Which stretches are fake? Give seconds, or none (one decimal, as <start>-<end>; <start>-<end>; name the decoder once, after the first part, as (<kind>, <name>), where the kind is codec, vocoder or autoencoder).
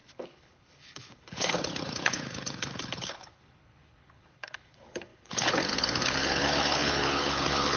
0.0-7.8 (codec, HILCodec)